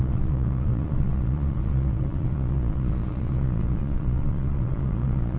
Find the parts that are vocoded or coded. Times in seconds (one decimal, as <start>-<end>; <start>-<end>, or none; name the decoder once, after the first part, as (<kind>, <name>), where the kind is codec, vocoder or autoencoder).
0.0-5.4 (vocoder, Vocos)